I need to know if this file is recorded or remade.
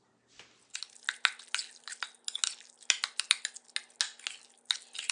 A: recorded